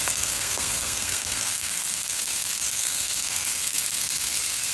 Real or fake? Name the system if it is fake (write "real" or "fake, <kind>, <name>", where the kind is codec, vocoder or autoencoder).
fake, codec, SNAC